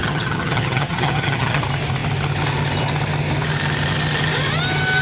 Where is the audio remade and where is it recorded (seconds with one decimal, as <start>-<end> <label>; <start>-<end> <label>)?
0.0-1.6 remade; 1.6-5.0 recorded